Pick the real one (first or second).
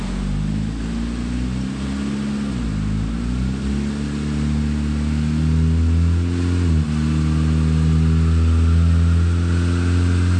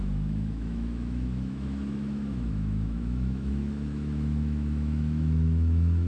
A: first